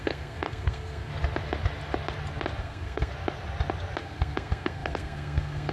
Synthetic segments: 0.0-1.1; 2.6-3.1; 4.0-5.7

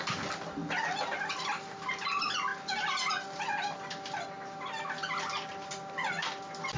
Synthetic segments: none

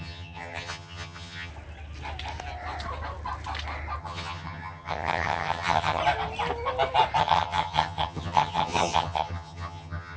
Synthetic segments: 0.0-1.5; 4.0-6.0; 7.2-10.2

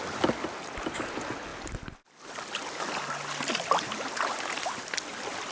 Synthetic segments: none

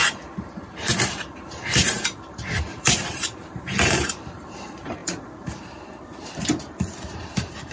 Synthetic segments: 1.5-7.7